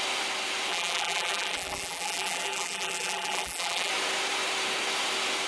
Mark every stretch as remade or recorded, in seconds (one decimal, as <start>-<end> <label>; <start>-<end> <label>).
0.0-0.7 recorded; 0.7-3.9 remade; 3.9-5.5 recorded